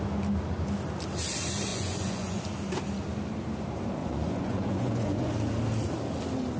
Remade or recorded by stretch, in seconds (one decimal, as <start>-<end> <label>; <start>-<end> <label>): 0.0-1.7 recorded; 1.7-2.4 remade; 2.4-4.0 recorded; 4.0-5.3 remade; 5.3-6.6 recorded